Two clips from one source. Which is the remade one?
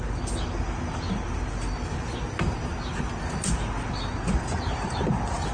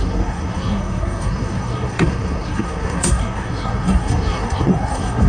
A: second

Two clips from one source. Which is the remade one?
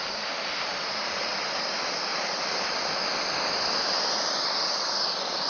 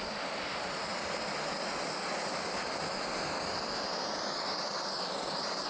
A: first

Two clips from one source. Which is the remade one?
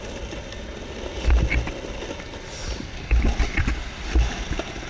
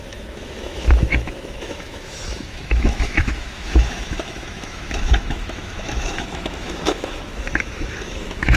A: second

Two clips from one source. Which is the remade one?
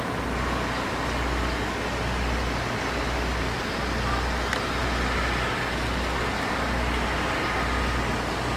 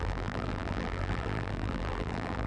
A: second